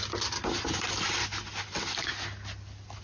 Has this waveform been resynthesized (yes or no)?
no